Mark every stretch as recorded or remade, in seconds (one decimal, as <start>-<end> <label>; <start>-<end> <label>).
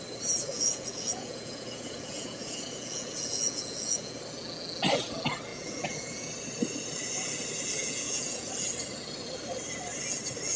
0.0-0.5 recorded; 0.5-4.2 remade; 4.2-5.5 recorded; 5.5-6.3 remade; 6.3-7.8 recorded; 7.8-8.5 remade; 8.5-10.6 recorded